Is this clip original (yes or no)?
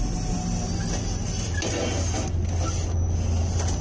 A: yes